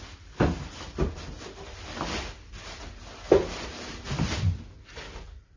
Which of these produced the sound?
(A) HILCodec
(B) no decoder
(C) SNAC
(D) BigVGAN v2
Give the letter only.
D